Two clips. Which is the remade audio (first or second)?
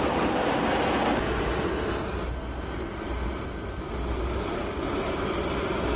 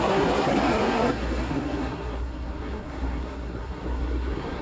second